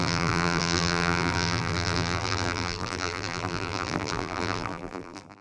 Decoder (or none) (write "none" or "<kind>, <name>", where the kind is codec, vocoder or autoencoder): vocoder, BigVGAN v2